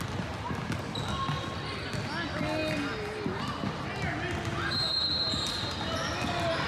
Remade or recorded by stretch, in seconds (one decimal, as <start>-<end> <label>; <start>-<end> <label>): 0.0-6.7 recorded